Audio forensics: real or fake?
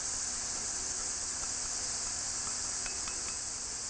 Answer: real